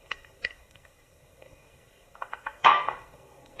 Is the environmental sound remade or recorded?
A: remade